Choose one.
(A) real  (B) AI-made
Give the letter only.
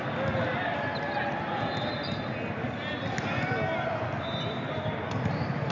A